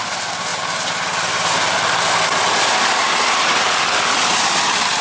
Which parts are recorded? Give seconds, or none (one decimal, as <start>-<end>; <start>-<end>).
0.0-5.0

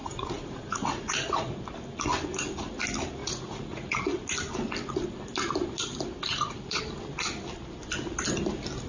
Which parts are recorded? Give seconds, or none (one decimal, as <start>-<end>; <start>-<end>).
1.6-3.2; 4.0-6.3; 6.8-8.9

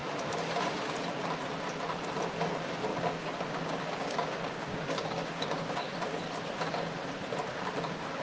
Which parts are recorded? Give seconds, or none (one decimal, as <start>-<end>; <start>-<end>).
0.0-2.9; 6.2-8.2